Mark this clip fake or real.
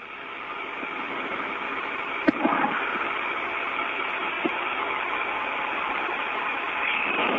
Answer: real